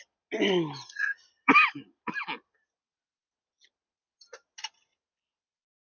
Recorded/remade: recorded